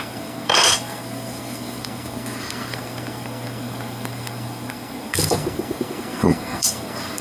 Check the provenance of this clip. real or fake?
fake